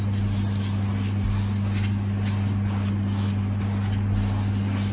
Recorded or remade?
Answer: recorded